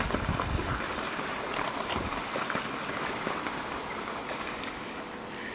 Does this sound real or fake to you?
real